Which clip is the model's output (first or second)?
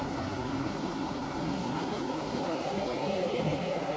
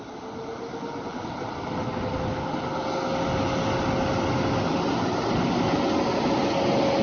first